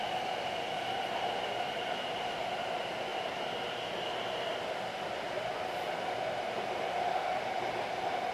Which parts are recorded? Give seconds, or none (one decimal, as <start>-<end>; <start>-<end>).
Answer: 0.0-8.3